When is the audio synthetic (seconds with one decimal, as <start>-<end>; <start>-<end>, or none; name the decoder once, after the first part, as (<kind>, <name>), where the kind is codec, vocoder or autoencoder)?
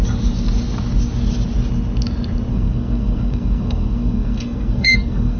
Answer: 2.5-5.4 (codec, SNAC)